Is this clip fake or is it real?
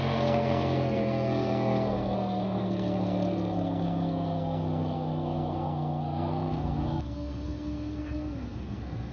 fake